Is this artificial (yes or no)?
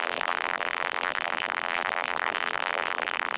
yes